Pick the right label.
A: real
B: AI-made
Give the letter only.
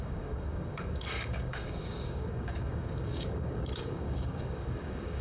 B